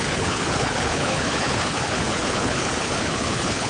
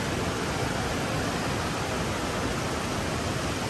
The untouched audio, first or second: second